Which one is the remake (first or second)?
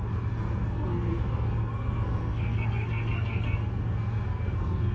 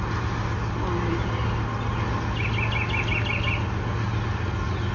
first